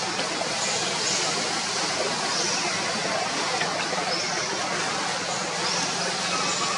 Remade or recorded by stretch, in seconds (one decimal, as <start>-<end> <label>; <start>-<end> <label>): 0.0-6.8 recorded